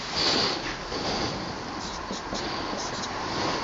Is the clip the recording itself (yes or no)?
no